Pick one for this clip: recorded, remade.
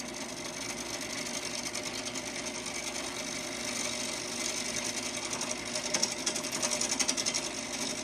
recorded